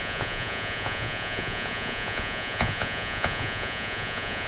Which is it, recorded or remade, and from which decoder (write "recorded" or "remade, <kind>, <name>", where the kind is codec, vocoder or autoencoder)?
remade, vocoder, Vocos